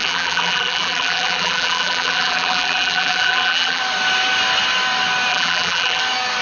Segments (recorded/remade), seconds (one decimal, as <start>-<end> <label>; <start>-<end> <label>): 0.0-3.8 remade; 3.8-5.3 recorded; 5.3-6.0 remade; 6.0-6.4 recorded